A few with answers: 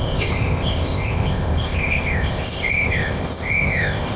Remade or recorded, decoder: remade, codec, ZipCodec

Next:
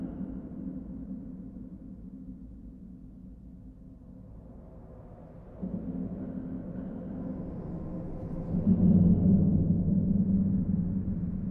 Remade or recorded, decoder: recorded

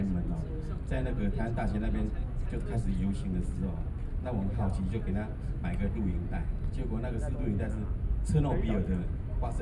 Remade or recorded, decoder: recorded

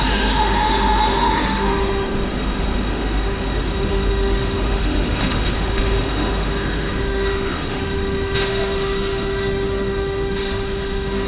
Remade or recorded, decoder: remade, autoencoder, DAC-VAE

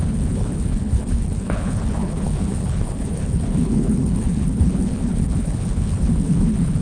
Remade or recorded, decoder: remade, codec, HILCodec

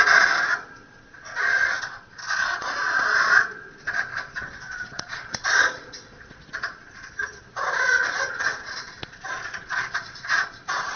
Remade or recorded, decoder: remade, vocoder, Vocos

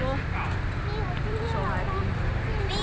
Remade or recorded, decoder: recorded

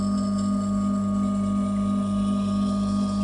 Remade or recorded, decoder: recorded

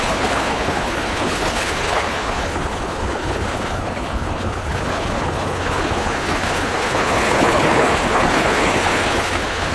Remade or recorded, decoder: remade, codec, HILCodec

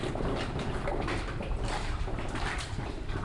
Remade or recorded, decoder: remade, vocoder, BigVGAN v2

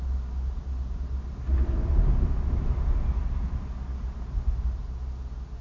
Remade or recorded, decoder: recorded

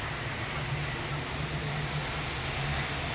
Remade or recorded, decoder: recorded